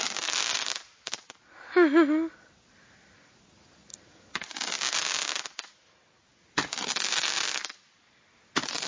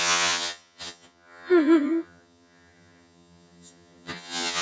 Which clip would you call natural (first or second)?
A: first